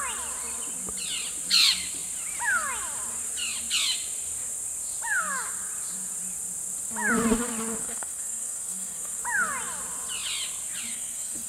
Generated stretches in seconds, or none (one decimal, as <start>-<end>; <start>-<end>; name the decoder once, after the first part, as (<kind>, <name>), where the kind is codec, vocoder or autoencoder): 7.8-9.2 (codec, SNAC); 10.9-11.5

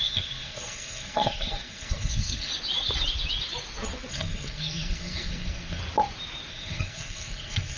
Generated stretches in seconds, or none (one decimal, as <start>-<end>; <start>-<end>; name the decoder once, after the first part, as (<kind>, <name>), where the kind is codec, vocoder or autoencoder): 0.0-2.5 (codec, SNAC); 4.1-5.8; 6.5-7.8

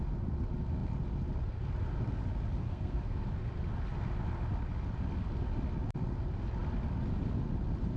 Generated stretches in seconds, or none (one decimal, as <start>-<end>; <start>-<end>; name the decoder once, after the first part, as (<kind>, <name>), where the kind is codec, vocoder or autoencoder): 2.6-3.2 (codec, SNAC)

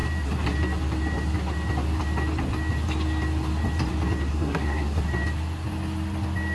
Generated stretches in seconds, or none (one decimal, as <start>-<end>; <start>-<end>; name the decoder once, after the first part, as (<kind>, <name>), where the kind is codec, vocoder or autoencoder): 4.3-5.0 (codec, SNAC)

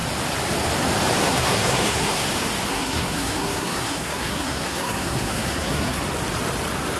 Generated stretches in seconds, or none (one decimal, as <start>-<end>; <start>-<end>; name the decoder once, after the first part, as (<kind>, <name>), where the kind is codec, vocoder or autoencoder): 1.2-2.3 (codec, SNAC); 2.7-6.0

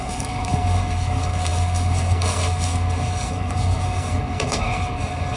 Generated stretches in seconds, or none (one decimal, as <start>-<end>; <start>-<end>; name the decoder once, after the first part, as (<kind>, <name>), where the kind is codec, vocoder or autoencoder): 0.0-5.4 (codec, SNAC)